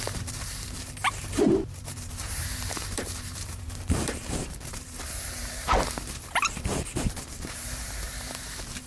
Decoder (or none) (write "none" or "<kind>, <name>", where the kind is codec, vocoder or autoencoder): vocoder, BigVGAN v2